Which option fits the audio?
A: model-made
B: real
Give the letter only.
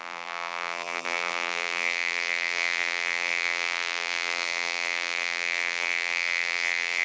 A